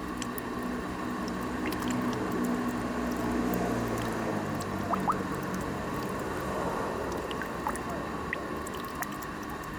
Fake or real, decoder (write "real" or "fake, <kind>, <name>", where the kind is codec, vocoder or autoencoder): real